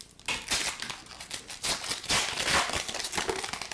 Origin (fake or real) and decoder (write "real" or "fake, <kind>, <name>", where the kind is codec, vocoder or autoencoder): real